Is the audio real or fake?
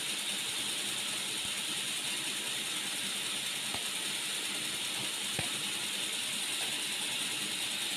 real